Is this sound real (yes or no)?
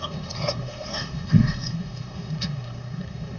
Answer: no